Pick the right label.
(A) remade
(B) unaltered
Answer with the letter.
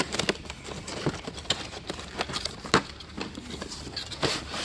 B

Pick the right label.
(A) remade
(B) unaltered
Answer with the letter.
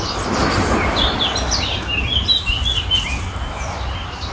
B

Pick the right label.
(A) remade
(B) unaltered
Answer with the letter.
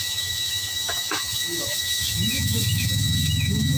A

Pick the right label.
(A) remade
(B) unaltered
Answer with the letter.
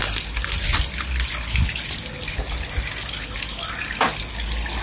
B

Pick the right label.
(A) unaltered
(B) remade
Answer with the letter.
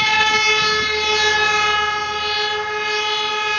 A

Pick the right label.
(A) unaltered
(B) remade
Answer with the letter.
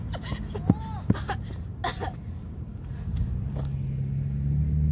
A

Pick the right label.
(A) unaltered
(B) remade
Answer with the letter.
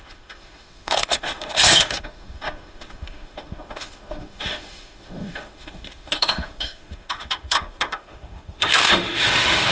B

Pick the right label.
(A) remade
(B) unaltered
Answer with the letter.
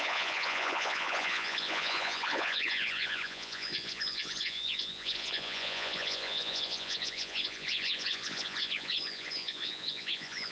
A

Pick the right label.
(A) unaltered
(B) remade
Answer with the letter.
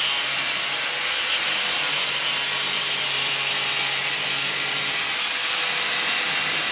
A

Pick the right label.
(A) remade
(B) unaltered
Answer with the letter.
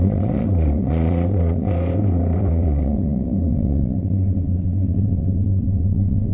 A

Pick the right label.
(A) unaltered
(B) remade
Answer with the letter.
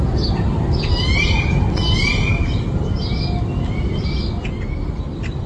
A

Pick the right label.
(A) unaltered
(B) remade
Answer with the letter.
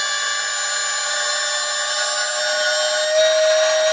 A